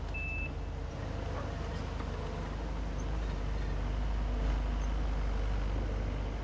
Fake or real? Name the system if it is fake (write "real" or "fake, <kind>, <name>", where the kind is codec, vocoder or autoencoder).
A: real